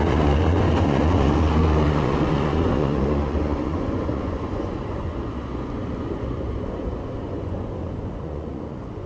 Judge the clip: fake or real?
fake